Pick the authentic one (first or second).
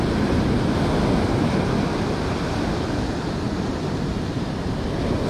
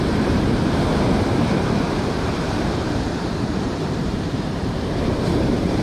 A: first